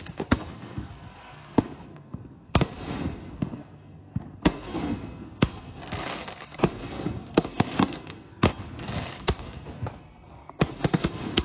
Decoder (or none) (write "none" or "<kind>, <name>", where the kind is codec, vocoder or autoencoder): codec, SNAC